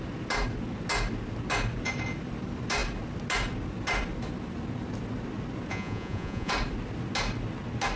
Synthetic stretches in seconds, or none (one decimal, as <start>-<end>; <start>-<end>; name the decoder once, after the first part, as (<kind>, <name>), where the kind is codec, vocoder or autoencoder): 5.7-6.5 (vocoder, Vocos)

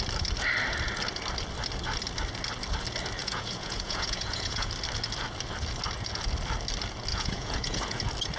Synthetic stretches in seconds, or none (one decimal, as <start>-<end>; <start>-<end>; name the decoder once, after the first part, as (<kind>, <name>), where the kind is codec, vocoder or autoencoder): 3.2-4.7 (vocoder, Vocos); 7.1-8.0

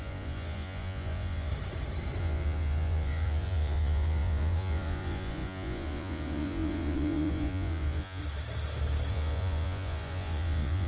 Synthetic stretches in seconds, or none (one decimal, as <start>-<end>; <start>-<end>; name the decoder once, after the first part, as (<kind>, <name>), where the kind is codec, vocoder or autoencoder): 0.0-1.5 (vocoder, Vocos); 2.2-8.2; 9.1-10.9

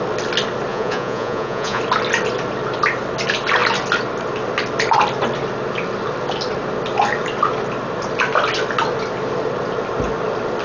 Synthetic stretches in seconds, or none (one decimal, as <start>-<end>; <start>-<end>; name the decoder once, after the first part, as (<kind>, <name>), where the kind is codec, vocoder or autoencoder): 0.7-1.8 (vocoder, Vocos)

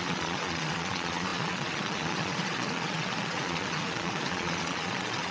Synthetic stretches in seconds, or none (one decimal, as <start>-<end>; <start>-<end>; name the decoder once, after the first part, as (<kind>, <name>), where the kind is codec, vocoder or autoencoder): 0.0-5.3 (vocoder, Vocos)

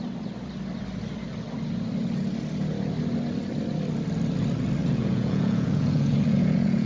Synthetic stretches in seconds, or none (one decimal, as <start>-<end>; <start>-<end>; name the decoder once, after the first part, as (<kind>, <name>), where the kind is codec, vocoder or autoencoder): 4.8-6.9 (vocoder, Vocos)

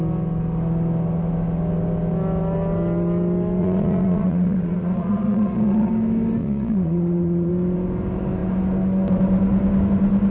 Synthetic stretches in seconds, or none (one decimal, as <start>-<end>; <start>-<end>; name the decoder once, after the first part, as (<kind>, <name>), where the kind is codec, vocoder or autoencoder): 3.6-5.9 (vocoder, Vocos); 6.4-7.5